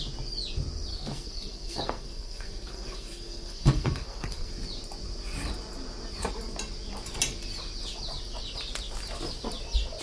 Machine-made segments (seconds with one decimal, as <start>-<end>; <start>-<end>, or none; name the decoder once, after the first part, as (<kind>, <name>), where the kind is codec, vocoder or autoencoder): 0.9-4.5 (codec, SNAC)